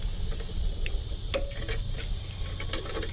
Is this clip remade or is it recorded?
recorded